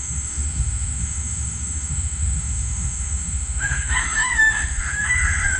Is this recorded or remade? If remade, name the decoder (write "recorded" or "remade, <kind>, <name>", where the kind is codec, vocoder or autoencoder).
remade, autoencoder, DAC-VAE